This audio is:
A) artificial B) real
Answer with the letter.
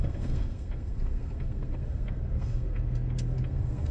A